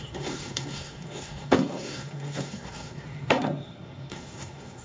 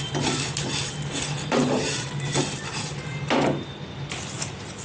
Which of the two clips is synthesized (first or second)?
first